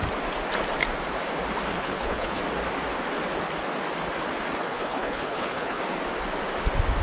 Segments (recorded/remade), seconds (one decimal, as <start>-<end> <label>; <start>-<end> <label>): 0.0-1.7 recorded; 1.7-2.4 remade; 2.4-4.6 recorded; 4.6-5.8 remade; 5.8-7.0 recorded

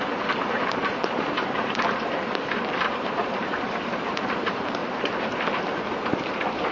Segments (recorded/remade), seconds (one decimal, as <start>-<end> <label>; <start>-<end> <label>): 0.0-2.1 remade; 2.1-2.9 recorded; 2.9-4.8 remade; 4.8-6.7 recorded